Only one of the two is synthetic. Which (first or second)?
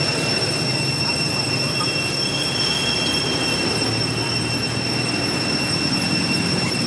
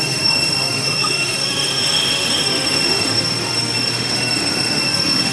second